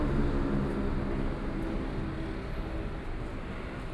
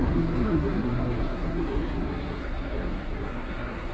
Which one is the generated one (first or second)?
second